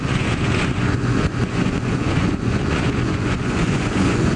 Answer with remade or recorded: remade